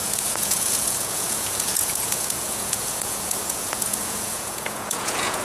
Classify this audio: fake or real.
fake